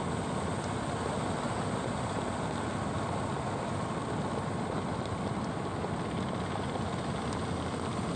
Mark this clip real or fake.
real